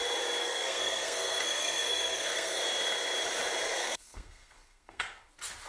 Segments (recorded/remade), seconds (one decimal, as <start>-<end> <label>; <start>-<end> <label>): 0.0-0.4 recorded; 0.4-2.6 remade; 2.6-3.8 recorded; 3.8-5.3 remade; 5.3-5.7 recorded